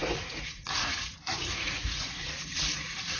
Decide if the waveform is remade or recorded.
remade